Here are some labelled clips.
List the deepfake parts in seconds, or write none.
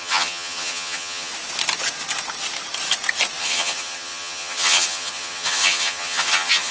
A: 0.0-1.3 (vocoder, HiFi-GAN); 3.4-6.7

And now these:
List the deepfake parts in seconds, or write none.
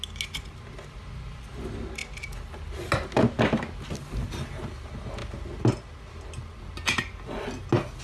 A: none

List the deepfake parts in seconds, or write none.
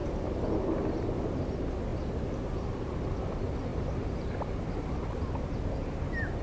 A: 0.0-0.5 (vocoder, BigVGAN v2); 1.9-2.7; 3.7-5.4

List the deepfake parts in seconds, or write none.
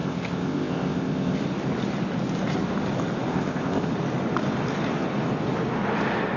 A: 0.0-1.4 (codec, ZipCodec); 3.3-3.9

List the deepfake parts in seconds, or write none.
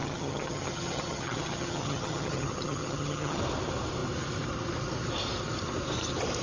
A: 0.0-3.4 (vocoder, HiFi-GAN)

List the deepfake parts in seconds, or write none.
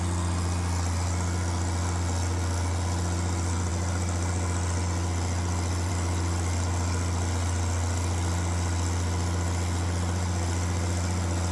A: none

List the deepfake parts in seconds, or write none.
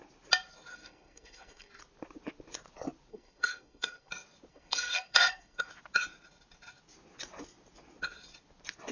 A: 0.7-1.7 (codec, SNAC); 3.1-4.1; 4.5-5.7